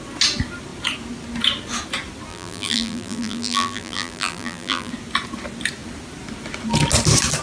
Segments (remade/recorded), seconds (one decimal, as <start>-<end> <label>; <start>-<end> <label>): 0.0-2.3 recorded; 2.3-4.9 remade; 4.9-7.4 recorded